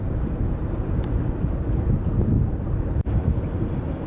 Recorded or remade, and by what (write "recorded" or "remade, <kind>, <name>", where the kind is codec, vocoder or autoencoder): recorded